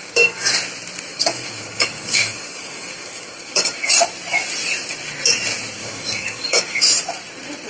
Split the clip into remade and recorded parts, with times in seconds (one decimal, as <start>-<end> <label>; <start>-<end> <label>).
0.0-0.5 remade; 0.5-1.1 recorded; 1.1-3.9 remade; 3.9-5.8 recorded; 5.8-6.8 remade; 6.8-7.7 recorded

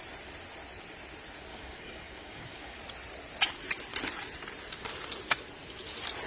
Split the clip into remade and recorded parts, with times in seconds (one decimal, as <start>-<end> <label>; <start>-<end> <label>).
0.0-1.5 recorded; 1.5-2.8 remade; 2.8-6.3 recorded